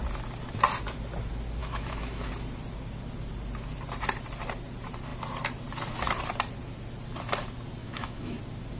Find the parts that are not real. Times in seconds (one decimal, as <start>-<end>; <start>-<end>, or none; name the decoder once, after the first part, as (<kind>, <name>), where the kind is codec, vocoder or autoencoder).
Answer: 1.6-2.3 (autoencoder, DAC-VAE); 7.8-8.4